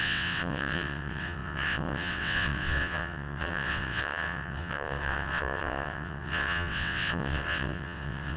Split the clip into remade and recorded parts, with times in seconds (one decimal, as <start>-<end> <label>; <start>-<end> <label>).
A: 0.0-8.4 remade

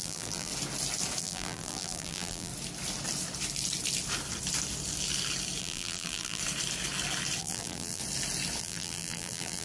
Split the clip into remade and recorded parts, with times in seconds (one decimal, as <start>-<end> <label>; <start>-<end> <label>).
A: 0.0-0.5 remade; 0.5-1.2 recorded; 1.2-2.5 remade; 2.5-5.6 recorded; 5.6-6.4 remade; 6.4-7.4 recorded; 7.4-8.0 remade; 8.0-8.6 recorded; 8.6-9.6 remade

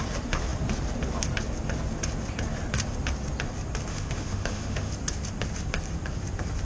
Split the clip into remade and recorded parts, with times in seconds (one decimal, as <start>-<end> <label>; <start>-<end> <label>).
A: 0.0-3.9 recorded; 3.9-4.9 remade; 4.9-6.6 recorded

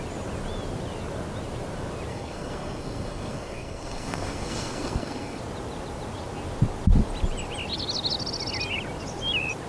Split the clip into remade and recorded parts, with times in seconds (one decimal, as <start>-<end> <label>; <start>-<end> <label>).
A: 0.0-2.1 recorded; 2.1-5.4 remade; 5.4-9.7 recorded

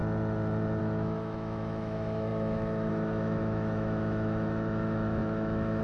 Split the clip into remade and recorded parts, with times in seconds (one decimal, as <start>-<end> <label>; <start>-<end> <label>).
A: 0.0-0.8 recorded; 0.8-5.8 remade

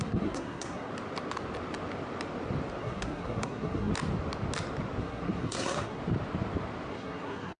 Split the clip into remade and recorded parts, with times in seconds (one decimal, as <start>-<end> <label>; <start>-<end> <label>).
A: 0.0-0.9 remade; 0.9-2.8 recorded; 2.8-3.9 remade; 3.9-5.0 recorded; 5.0-6.0 remade; 6.0-6.9 recorded; 6.9-7.6 remade

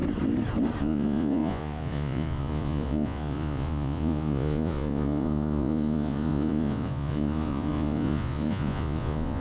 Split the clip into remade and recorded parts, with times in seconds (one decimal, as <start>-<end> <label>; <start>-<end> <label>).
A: 0.0-0.8 recorded; 0.8-9.4 remade

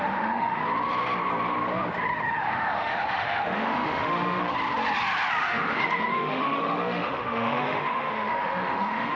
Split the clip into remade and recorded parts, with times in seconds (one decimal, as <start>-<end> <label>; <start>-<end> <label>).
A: 0.0-0.6 remade; 0.6-2.3 recorded; 2.3-4.4 remade; 4.4-5.4 recorded; 5.4-9.1 remade